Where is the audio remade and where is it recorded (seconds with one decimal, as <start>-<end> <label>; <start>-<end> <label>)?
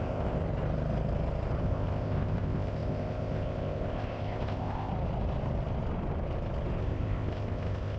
0.0-0.4 remade; 0.4-1.6 recorded; 1.6-4.9 remade; 4.9-6.8 recorded; 6.8-8.0 remade